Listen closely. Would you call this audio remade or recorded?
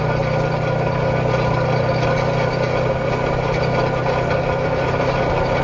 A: recorded